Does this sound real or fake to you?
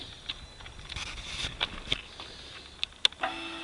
real